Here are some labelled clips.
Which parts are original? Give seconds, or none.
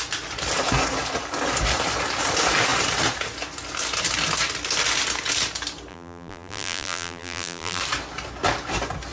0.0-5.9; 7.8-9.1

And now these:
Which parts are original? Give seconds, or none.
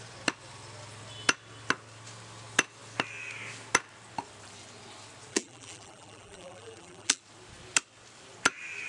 0.0-5.3; 7.2-8.9